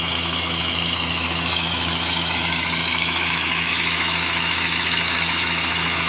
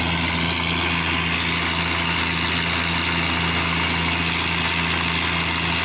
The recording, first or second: second